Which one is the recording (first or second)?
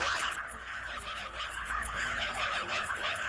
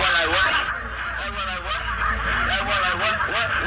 second